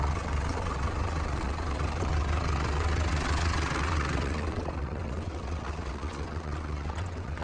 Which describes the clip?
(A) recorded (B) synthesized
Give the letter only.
B